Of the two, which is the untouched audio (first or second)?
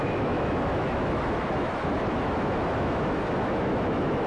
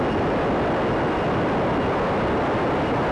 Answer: second